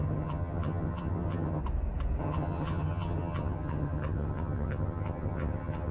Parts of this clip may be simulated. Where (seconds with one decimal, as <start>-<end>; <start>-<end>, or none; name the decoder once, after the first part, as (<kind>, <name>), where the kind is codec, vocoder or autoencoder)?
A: 0.0-1.6 (vocoder, HiFi-GAN); 2.2-5.9